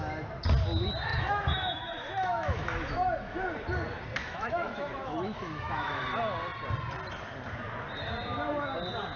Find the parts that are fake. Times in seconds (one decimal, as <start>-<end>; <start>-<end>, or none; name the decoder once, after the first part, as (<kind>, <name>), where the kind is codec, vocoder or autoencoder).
1.1-3.4 (autoencoder, DAC-VAE); 4.2-6.0